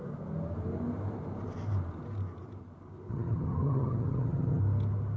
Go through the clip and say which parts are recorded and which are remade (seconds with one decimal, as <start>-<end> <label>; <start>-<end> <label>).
0.0-3.1 recorded; 3.1-4.6 remade; 4.6-5.2 recorded